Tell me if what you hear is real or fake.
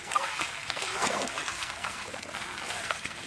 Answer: fake